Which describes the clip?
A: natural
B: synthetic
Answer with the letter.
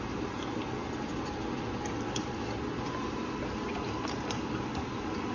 A